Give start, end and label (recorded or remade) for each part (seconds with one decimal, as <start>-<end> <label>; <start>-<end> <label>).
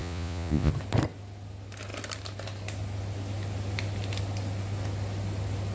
0.0-0.7 remade; 0.7-5.7 recorded